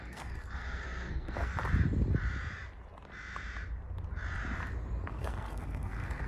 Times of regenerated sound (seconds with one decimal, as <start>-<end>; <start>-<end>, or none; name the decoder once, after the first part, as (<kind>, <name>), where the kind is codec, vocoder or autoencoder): 0.0-1.6 (codec, SNAC); 5.1-6.3